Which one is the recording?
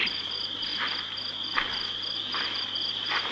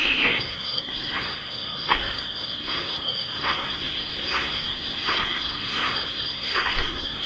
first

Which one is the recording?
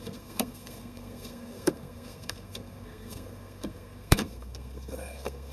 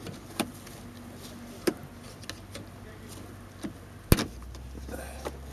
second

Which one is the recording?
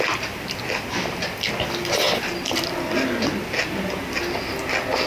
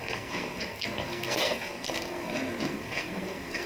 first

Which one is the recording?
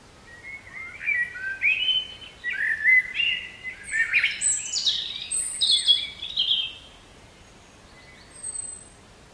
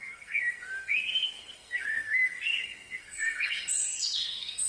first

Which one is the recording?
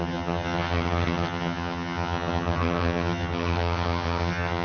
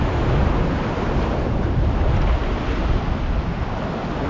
second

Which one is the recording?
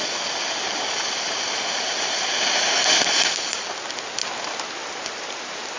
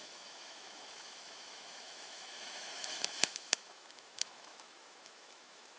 first